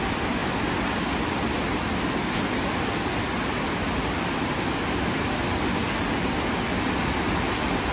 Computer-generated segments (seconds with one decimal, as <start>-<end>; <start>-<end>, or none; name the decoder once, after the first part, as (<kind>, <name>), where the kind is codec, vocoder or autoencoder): none